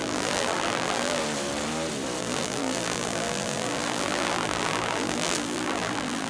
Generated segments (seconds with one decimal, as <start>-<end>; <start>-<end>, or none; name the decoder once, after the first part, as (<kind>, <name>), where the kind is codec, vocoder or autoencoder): 0.0-1.2 (vocoder, BigVGAN v2); 2.2-6.3